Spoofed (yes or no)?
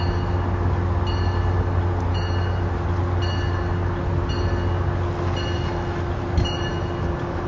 no